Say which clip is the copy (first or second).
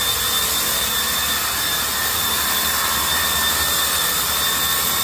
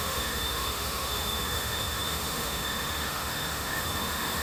second